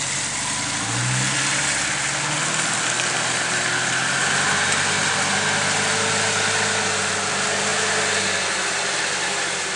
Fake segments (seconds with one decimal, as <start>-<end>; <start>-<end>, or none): none